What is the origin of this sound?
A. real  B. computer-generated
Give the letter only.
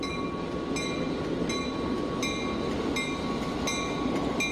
A